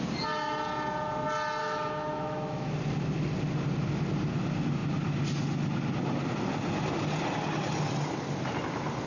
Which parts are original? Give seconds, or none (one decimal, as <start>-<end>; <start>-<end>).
0.0-1.6; 2.7-9.1